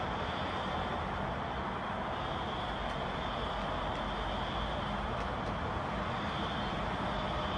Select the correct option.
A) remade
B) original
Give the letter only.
B